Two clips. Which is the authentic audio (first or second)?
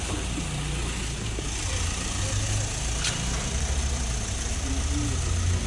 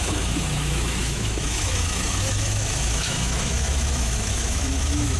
first